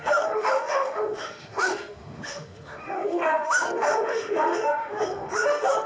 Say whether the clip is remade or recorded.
remade